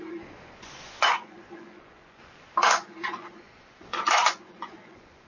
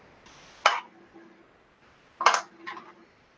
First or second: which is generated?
first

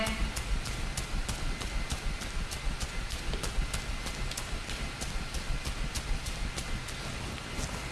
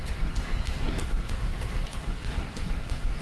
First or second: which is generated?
second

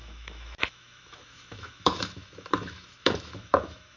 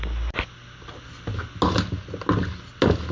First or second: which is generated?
first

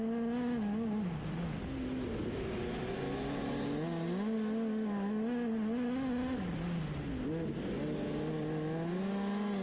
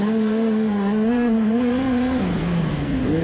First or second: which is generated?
second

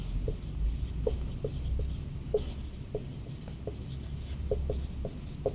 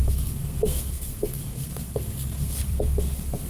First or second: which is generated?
second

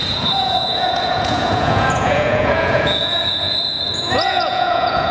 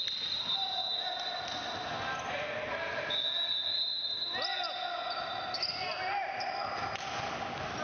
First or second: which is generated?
first